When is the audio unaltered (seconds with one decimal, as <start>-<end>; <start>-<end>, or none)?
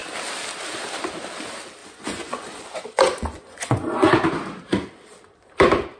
0.0-1.8; 4.1-6.0